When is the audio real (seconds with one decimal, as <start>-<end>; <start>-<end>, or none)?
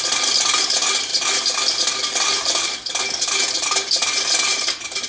0.0-5.1